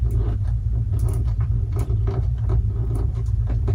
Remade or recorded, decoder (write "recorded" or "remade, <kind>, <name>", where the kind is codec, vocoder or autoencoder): remade, vocoder, BigVGAN v2